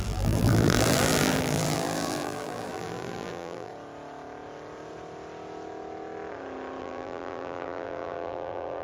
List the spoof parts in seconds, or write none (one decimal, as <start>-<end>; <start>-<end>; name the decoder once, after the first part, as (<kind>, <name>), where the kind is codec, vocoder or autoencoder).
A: 0.0-3.7 (vocoder, BigVGAN v2); 6.8-8.8